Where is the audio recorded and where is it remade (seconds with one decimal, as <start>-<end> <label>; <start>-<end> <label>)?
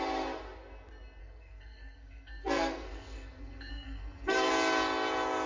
0.0-1.2 recorded; 1.2-4.5 remade; 4.5-5.5 recorded